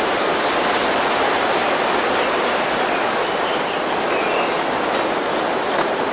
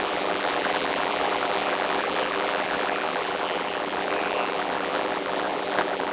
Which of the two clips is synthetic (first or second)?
second